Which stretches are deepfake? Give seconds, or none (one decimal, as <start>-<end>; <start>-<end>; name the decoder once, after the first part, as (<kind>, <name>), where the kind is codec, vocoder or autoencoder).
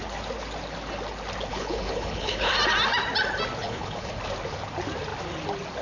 1.5-2.5 (codec, HILCodec); 3.6-4.1